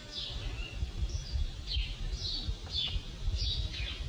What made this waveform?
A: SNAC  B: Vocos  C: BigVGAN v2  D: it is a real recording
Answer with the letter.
D